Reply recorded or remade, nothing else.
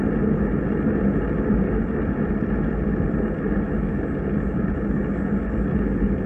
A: recorded